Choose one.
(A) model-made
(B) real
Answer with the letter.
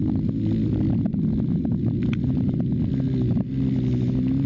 B